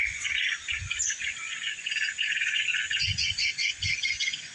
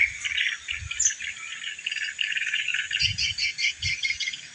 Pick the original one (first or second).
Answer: second